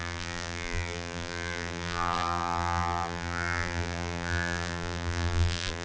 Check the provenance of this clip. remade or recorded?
remade